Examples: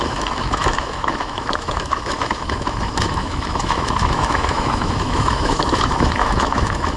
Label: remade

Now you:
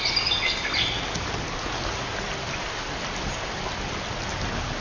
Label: recorded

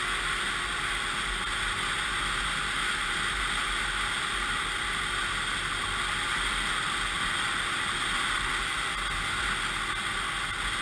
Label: recorded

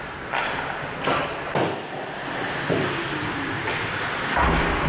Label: recorded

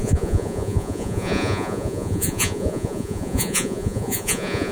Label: remade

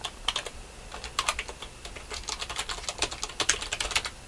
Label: recorded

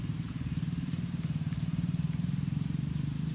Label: remade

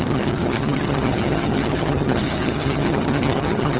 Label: remade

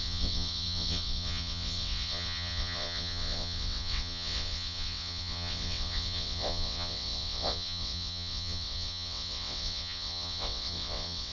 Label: remade